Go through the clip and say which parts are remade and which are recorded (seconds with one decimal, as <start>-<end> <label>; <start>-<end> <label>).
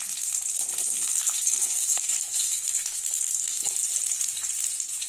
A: 0.0-0.8 recorded; 0.8-3.7 remade; 3.7-5.1 recorded